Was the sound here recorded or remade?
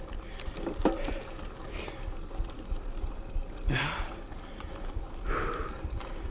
recorded